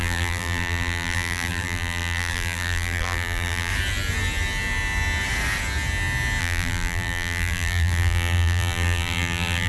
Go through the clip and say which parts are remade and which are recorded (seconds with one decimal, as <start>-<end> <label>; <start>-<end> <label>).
0.0-3.7 remade; 3.7-6.4 recorded; 6.4-9.7 remade